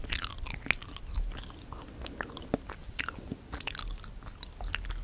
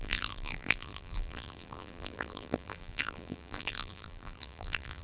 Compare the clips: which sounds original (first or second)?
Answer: first